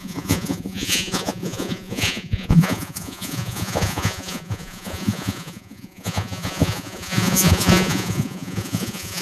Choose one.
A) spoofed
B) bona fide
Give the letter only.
A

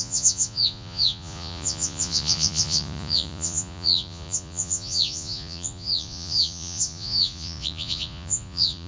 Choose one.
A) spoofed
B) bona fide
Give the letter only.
A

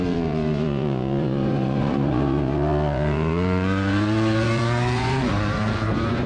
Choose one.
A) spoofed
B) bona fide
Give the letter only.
A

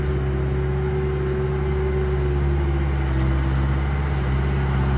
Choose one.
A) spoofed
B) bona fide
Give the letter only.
B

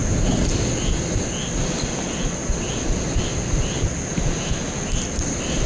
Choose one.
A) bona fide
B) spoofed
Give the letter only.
A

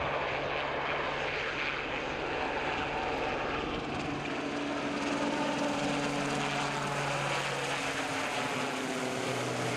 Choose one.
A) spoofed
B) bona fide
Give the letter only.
B